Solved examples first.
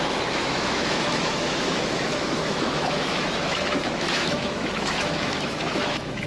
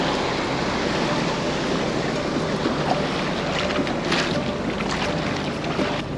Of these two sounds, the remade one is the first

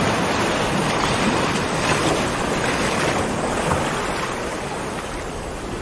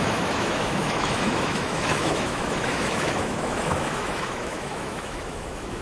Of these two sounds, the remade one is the second